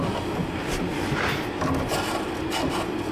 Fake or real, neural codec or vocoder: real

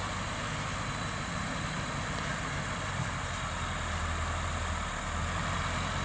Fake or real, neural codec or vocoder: real